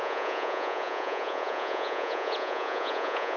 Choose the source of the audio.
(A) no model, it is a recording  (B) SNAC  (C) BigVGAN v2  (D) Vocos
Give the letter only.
D